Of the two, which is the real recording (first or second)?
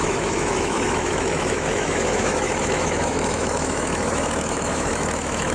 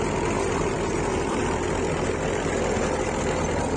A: second